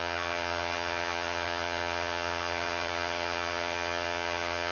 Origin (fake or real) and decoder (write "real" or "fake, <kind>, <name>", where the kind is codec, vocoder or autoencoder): fake, vocoder, HiFi-GAN